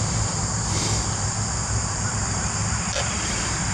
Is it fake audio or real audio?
fake